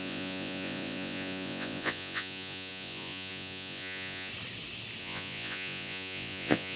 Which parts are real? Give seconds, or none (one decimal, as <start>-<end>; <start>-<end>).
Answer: 4.3-5.0